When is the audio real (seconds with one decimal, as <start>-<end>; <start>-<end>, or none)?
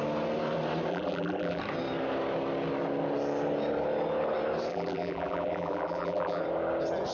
0.0-0.9; 1.6-4.7; 6.4-7.1